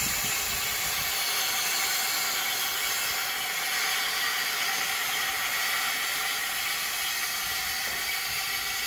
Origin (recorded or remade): recorded